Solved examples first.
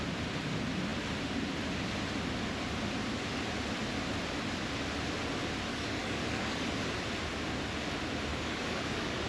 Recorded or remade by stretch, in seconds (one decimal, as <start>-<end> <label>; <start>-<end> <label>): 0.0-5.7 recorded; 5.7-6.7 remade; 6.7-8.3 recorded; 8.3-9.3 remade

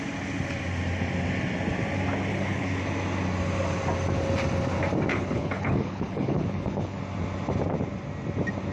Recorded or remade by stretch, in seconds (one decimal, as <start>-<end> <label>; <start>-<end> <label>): 0.0-2.3 recorded; 2.3-2.8 remade; 2.8-5.1 recorded; 5.1-7.0 remade; 7.0-8.7 recorded

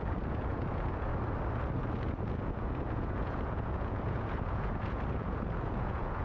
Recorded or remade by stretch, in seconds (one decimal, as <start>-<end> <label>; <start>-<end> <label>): 0.0-1.1 remade; 1.1-1.9 recorded; 1.9-6.2 remade

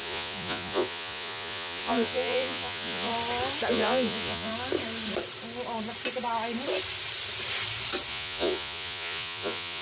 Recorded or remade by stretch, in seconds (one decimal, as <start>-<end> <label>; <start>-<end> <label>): 0.0-3.1 remade; 3.1-3.7 recorded; 3.7-4.5 remade; 4.5-8.1 recorded; 8.1-9.8 remade

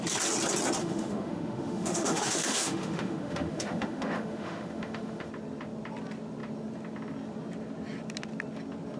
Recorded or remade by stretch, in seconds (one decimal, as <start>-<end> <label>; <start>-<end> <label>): 0.0-0.8 recorded; 0.8-5.3 remade; 5.3-9.0 recorded